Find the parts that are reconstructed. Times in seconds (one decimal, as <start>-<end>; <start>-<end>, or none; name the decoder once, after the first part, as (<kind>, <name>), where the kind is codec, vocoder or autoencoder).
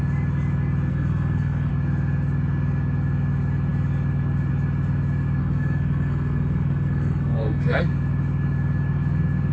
0.9-1.7 (codec, SNAC); 5.4-7.8